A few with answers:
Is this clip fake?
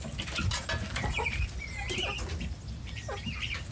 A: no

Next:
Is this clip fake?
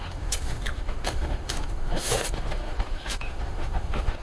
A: yes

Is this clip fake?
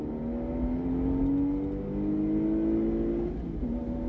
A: no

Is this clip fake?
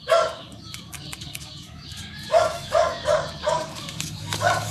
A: yes